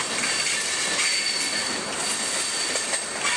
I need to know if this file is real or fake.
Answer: real